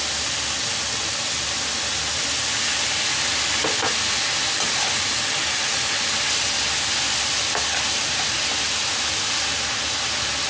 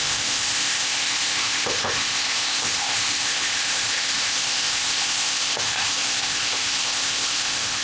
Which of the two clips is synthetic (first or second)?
second